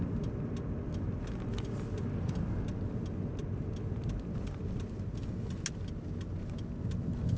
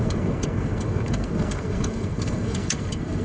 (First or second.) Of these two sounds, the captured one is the first